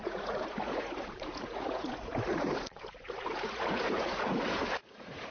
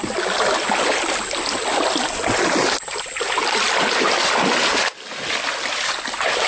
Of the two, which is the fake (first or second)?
first